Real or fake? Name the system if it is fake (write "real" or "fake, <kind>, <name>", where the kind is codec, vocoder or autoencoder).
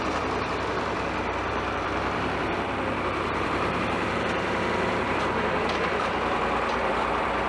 fake, vocoder, BigVGAN v2